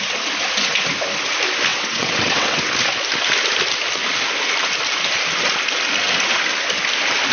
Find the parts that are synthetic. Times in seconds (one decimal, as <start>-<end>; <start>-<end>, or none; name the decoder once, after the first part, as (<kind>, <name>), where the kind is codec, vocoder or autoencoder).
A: 1.7-2.6 (vocoder, WaveNeXt)